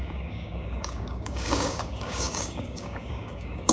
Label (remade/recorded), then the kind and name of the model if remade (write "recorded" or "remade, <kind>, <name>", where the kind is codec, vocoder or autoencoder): remade, codec, DAC